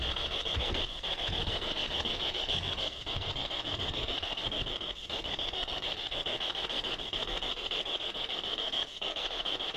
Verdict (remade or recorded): remade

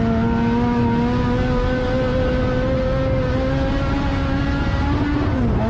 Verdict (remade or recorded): recorded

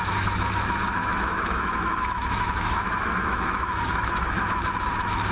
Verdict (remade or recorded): remade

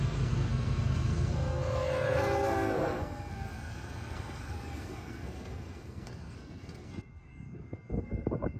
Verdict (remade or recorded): remade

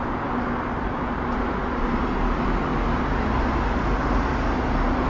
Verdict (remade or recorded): recorded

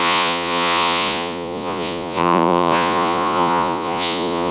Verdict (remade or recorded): remade